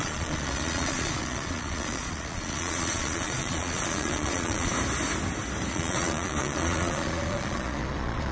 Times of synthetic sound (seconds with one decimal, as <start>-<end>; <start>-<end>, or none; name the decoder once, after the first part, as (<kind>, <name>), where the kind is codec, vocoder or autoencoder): 0.0-4.7 (vocoder, Vocos); 5.7-8.3